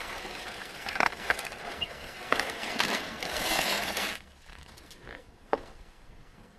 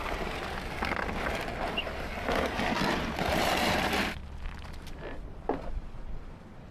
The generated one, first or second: first